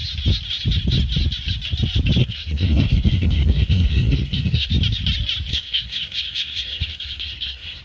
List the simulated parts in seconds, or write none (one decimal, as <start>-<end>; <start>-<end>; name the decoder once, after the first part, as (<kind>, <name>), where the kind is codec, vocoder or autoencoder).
2.2-4.7 (codec, SNAC); 5.5-7.8